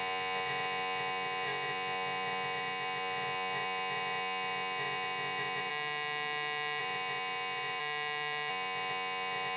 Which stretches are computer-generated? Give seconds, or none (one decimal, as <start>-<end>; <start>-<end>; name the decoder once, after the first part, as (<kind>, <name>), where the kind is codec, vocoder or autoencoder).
0.0-5.7 (vocoder, Vocos); 6.8-7.8; 8.5-9.6